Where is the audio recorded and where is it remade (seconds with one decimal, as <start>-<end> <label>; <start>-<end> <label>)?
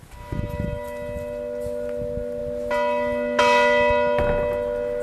0.0-5.0 recorded